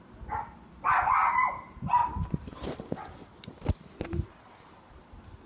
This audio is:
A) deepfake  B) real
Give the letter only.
A